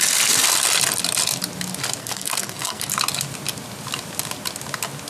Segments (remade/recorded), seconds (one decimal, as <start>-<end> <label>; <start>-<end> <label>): 0.0-2.0 recorded; 2.0-2.9 remade; 2.9-5.1 recorded